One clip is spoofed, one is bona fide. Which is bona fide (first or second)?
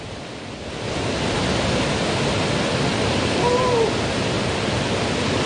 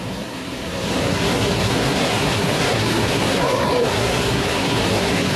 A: first